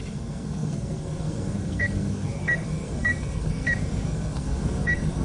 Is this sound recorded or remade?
remade